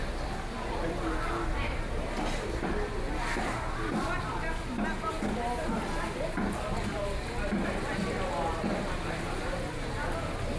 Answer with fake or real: real